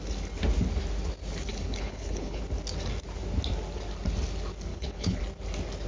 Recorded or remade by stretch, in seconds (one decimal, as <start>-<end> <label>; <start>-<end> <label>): 0.0-1.5 recorded; 1.5-2.4 remade; 2.4-4.7 recorded; 4.7-5.2 remade; 5.2-5.9 recorded